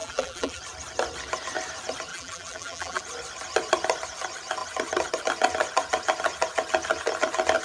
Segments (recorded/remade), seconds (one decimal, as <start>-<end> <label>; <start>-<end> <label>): 0.0-0.6 remade; 0.6-2.1 recorded; 2.1-3.0 remade; 3.0-7.6 recorded